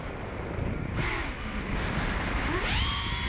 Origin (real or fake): real